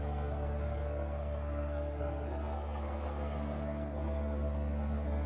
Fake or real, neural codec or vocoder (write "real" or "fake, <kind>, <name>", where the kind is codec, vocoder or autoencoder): fake, codec, SNAC